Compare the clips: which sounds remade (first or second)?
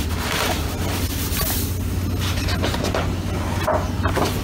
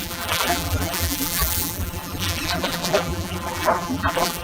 second